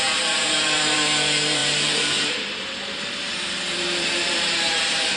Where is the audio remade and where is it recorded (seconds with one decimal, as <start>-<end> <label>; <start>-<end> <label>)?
0.0-5.2 remade